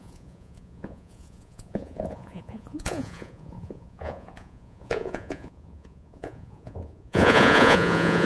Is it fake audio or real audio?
fake